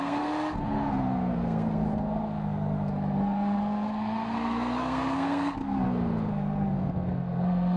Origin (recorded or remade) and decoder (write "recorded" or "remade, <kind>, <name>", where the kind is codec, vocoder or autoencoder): remade, codec, SNAC